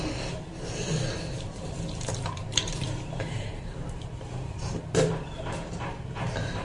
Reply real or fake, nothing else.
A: fake